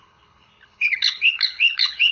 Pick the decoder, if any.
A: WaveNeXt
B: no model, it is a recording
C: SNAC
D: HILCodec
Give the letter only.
D